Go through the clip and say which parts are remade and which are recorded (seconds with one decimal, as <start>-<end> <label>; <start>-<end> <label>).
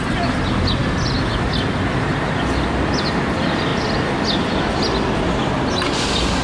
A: 0.0-6.4 recorded